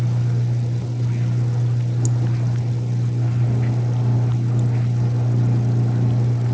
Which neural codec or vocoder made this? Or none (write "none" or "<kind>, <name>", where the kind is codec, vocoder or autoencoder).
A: none